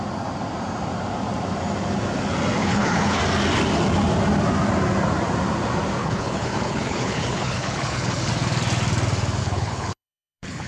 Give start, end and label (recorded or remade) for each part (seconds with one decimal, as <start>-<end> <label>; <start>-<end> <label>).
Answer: 0.0-2.6 recorded; 2.6-3.2 remade; 3.2-6.0 recorded; 6.0-8.3 remade; 8.3-9.4 recorded; 9.4-10.7 remade